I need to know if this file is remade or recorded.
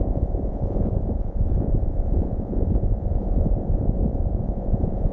remade